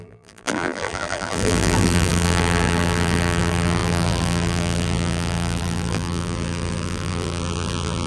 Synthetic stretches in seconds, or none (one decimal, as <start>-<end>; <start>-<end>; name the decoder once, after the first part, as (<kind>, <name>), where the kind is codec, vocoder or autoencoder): 0.0-8.1 (vocoder, BigVGAN v2)